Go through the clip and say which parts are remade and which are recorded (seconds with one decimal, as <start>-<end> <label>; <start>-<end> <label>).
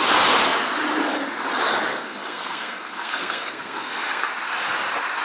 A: 0.0-1.9 recorded; 1.9-4.3 remade; 4.3-5.2 recorded